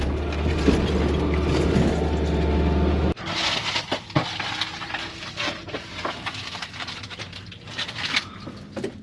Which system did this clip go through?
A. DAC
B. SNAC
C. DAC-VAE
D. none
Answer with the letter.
D